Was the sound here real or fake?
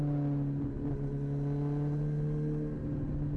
real